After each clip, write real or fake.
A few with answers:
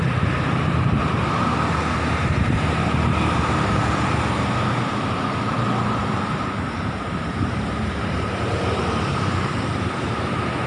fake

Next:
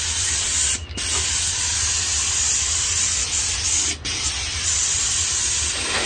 real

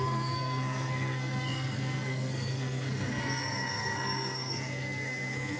fake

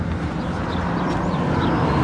real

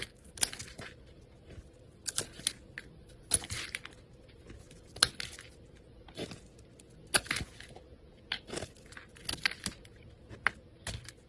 real